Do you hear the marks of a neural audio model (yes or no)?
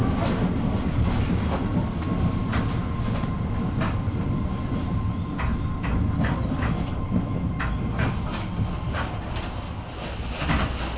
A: no